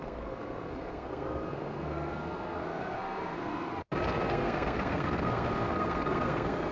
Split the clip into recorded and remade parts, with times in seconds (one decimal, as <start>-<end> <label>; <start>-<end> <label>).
0.0-3.7 remade; 3.7-4.3 recorded; 4.3-6.7 remade